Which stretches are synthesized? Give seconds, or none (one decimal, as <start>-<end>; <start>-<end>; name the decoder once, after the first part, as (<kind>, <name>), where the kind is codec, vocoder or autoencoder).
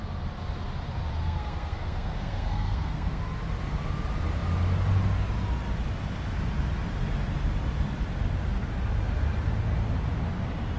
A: 1.2-3.2 (codec, SNAC)